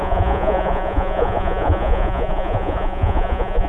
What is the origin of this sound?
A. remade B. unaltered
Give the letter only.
A